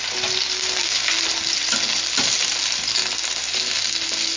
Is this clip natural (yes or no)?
yes